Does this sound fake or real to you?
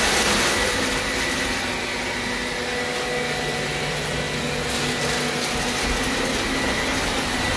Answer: real